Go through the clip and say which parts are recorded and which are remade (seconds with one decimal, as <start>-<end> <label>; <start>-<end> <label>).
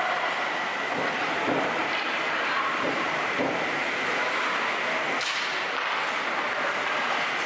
0.0-1.8 recorded; 1.8-3.9 remade; 3.9-7.5 recorded